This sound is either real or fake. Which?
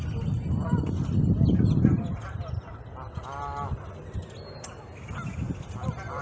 real